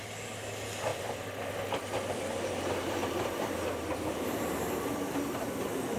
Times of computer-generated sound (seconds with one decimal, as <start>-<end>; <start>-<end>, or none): none